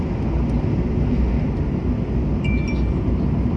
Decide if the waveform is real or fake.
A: real